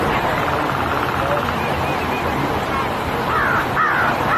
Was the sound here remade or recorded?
recorded